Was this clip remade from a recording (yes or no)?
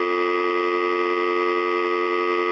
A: no